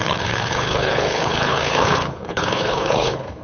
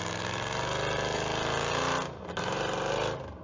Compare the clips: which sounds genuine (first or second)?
second